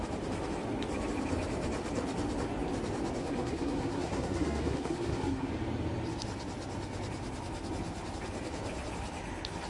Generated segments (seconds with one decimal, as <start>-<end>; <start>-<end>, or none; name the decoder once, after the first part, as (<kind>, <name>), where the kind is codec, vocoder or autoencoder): 3.2-5.5 (codec, SNAC)